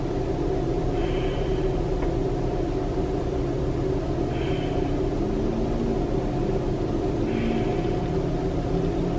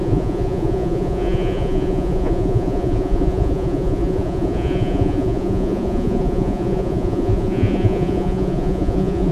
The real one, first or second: first